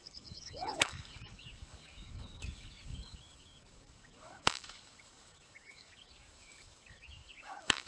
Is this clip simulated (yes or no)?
yes